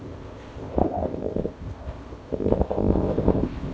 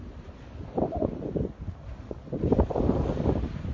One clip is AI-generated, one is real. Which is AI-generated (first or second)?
first